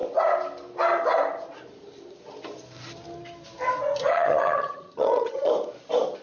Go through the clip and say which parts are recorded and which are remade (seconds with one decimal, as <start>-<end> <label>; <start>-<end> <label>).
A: 0.0-4.1 recorded; 4.1-5.5 remade; 5.5-6.2 recorded